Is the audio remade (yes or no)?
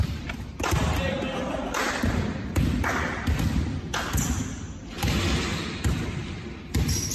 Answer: yes